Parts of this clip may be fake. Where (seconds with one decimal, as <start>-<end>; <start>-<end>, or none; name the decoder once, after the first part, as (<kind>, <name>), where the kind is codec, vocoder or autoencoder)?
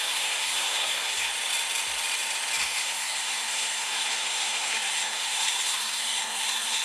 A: 0.0-1.3 (codec, SNAC); 2.6-6.8